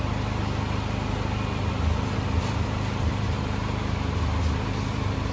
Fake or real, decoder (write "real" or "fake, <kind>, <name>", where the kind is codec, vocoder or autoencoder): real